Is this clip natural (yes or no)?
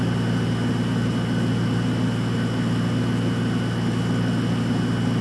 yes